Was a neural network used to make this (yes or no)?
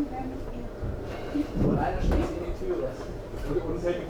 yes